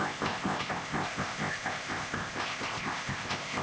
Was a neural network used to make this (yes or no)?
yes